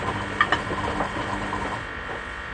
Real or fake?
real